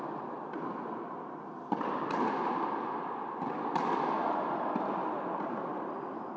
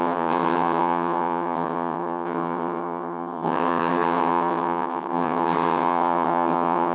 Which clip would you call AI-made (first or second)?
second